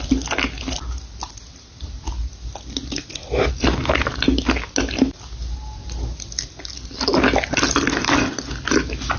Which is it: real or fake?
real